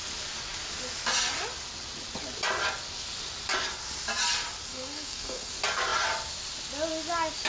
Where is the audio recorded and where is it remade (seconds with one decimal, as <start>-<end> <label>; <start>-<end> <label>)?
0.0-4.7 recorded; 4.7-5.5 remade; 5.5-7.5 recorded